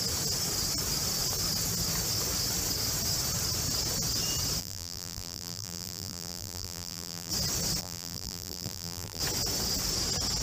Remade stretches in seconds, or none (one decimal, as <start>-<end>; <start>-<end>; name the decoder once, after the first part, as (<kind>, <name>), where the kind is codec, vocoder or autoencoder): 4.6-7.3 (vocoder, BigVGAN v2); 7.8-9.2